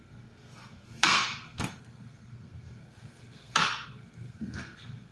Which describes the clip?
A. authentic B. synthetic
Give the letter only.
B